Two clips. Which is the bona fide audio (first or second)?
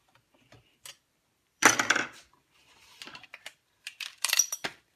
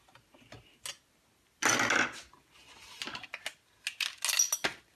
second